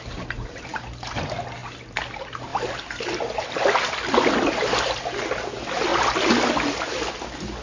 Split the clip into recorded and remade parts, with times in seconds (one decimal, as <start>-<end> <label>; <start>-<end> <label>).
0.0-7.6 recorded